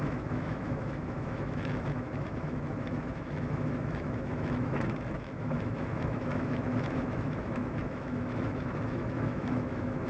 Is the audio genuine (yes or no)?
no